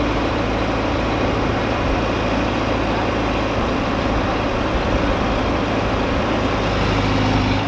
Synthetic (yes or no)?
no